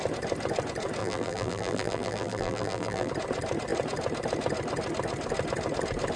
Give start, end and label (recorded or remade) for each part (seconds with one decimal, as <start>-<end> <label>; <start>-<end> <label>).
0.0-1.0 recorded; 1.0-3.1 remade; 3.1-6.2 recorded

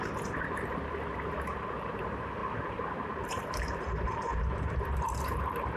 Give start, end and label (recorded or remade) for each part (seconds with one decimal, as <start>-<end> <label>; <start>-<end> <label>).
0.0-2.4 remade; 2.4-3.2 recorded; 3.2-5.8 remade

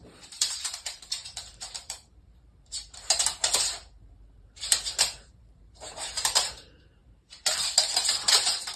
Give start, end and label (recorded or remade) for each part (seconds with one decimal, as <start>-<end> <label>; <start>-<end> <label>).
0.0-7.0 remade; 7.0-8.2 recorded; 8.2-8.8 remade

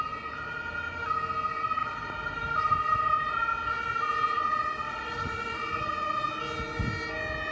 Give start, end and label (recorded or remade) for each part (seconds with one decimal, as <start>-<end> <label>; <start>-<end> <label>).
0.0-1.8 recorded; 1.8-3.4 remade; 3.4-4.5 recorded; 4.5-6.3 remade; 6.3-7.5 recorded

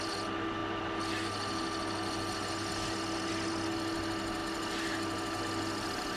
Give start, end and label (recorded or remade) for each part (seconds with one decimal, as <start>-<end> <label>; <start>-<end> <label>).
0.0-6.2 recorded